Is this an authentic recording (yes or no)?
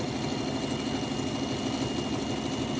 yes